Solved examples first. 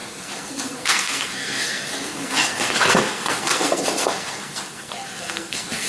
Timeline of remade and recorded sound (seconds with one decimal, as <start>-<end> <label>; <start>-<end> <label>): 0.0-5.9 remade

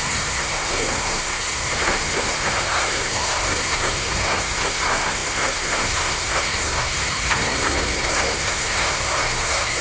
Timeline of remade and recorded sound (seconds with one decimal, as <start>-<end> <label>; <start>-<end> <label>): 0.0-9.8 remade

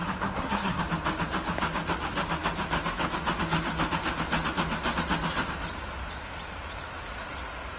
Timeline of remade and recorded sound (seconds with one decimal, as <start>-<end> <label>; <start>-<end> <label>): 0.0-0.8 remade; 0.8-7.8 recorded

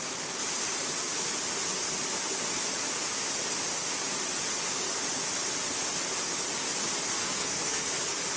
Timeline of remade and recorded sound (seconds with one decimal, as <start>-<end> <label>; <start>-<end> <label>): 0.0-7.2 recorded; 7.2-7.9 remade; 7.9-8.4 recorded

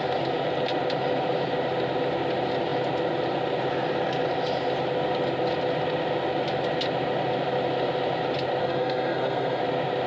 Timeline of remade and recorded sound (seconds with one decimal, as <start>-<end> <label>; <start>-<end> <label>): 0.0-8.6 recorded; 8.6-9.6 remade; 9.6-10.1 recorded